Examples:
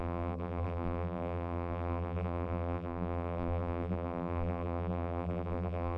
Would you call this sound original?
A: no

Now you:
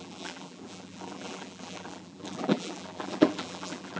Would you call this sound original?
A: no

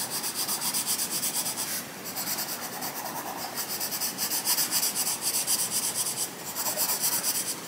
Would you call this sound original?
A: yes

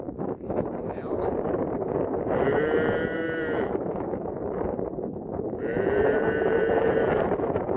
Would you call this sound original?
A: no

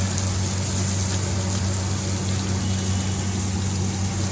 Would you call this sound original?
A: yes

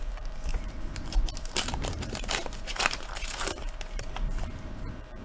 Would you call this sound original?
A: no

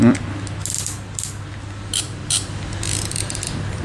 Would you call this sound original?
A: yes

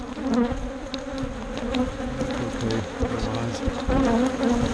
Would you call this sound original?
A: yes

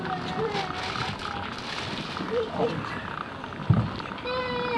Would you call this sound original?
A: yes